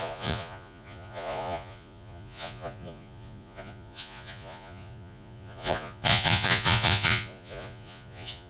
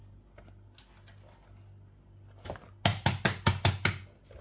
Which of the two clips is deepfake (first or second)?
first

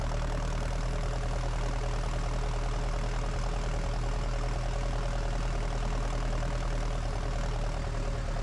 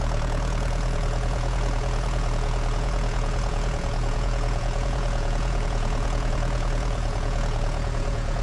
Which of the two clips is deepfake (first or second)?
second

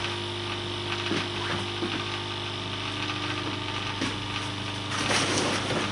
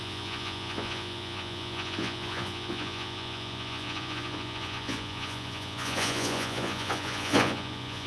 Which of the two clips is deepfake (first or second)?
second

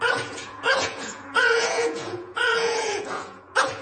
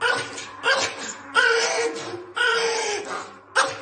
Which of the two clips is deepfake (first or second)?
first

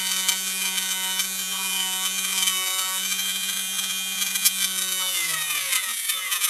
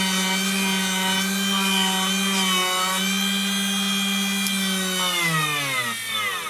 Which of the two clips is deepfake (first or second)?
first